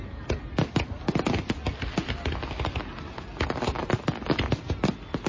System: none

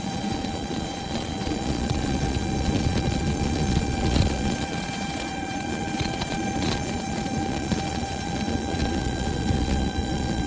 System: vocoder, Vocos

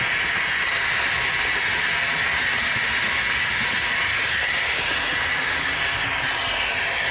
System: none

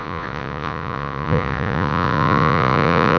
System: vocoder, Vocos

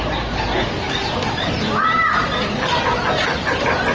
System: none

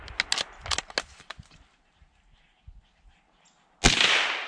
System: none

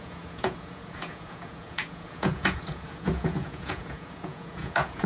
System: vocoder, Vocos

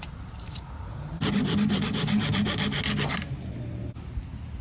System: none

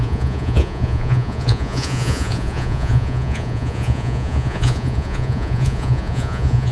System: vocoder, Vocos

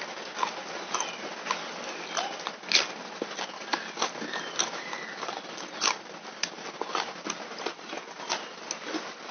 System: none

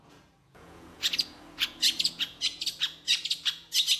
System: vocoder, Vocos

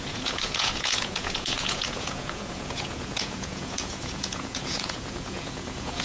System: vocoder, Vocos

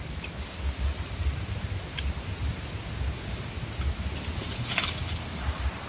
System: none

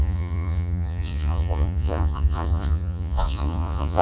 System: vocoder, Vocos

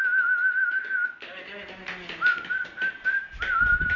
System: none